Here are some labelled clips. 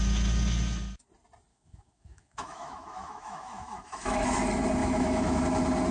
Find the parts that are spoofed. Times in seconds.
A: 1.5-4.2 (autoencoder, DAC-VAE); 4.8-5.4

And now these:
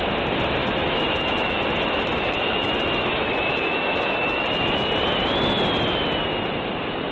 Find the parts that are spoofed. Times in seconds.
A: 0.6-4.9 (autoencoder, DAC-VAE)

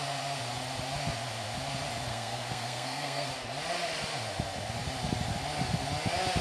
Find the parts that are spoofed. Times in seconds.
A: 2.1-3.3 (codec, SNAC)

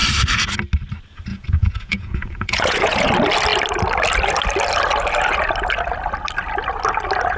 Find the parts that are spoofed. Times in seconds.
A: 1.3-3.1 (vocoder, Vocos)

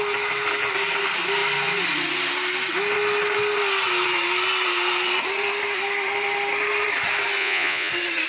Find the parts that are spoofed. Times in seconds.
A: 7.4-7.9 (vocoder, Vocos)

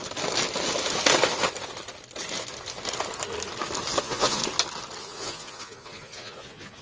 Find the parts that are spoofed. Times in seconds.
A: 4.0-4.4 (vocoder, Vocos); 5.0-6.8

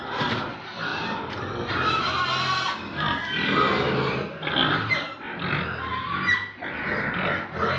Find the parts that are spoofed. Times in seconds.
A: none

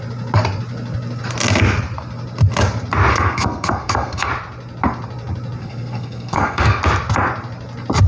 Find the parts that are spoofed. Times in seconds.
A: 3.1-4.3 (codec, SNAC); 5.6-6.8